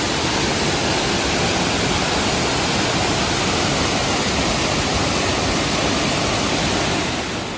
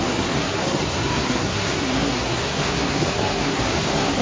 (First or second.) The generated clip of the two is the second